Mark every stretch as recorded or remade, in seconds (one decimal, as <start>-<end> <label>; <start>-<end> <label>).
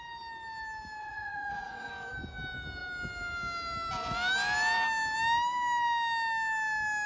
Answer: 0.0-1.0 recorded; 1.0-1.9 remade; 1.9-7.1 recorded